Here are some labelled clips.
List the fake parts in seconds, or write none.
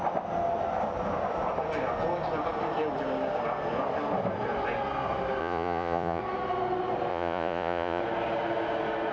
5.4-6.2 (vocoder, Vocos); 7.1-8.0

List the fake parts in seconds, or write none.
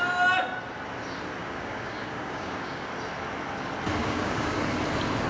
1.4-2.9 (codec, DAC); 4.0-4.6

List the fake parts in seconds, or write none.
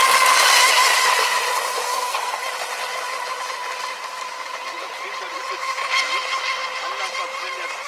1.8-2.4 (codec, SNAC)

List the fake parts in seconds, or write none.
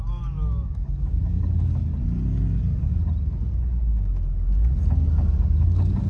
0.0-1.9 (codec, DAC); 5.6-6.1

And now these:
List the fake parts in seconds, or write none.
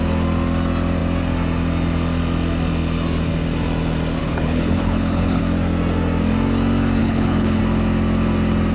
4.2-5.4 (codec, HILCodec); 7.0-7.6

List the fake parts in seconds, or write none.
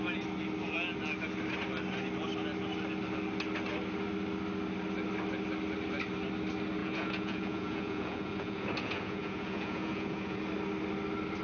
6.8-10.4 (vocoder, Vocos)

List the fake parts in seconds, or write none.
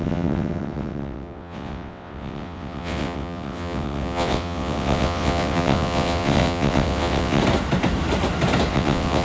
0.0-7.4 (vocoder, WaveNeXt); 8.7-9.2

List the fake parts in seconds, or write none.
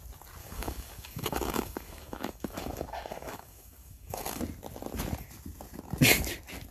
0.4-4.4 (codec, DAC)